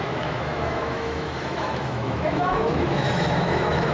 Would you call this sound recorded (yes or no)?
no